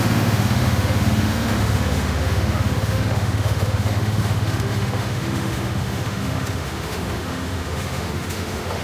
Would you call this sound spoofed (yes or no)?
yes